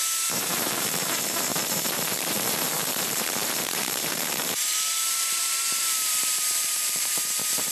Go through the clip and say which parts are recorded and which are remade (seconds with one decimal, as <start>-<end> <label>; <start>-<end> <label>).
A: 0.0-7.7 remade